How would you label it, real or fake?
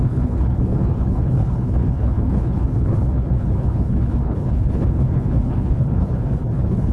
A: fake